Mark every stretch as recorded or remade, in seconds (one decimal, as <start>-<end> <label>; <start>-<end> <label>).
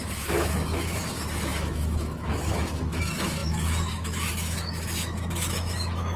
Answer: 0.0-6.2 remade